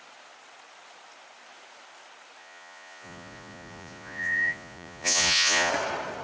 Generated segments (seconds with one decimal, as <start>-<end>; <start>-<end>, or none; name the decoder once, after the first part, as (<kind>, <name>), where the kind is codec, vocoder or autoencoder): 2.4-5.7 (vocoder, Vocos)